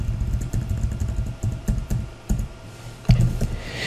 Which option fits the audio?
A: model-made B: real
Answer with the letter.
B